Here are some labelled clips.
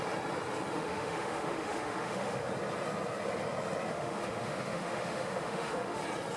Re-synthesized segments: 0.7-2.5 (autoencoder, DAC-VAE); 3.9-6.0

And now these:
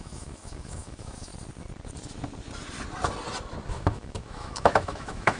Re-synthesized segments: 0.0-1.3 (autoencoder, DAC-VAE); 3.7-5.4

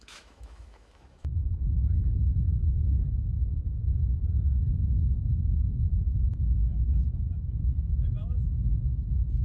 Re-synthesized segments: 0.0-9.4 (autoencoder, DAC-VAE)

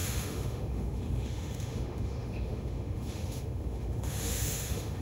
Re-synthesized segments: 0.0-5.0 (autoencoder, DAC-VAE)

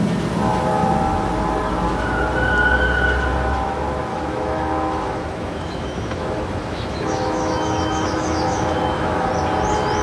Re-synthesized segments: 4.1-9.3 (autoencoder, DAC-VAE)

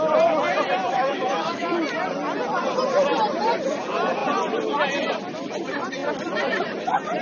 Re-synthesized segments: 0.9-1.8 (autoencoder, DAC-VAE)

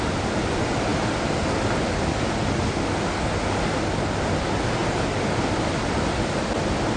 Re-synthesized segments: none